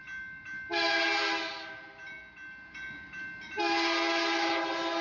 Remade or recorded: recorded